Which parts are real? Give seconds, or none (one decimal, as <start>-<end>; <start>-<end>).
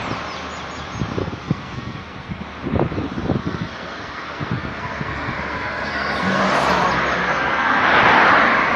0.0-1.2; 2.4-3.4; 6.4-7.2; 7.8-8.8